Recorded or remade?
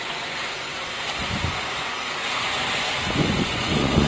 remade